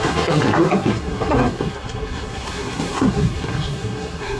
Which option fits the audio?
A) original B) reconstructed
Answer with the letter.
B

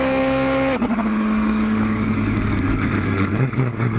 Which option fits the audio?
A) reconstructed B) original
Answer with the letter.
A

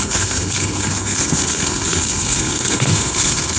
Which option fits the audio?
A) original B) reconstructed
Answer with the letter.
B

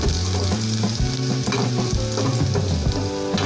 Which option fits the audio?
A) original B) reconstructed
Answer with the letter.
A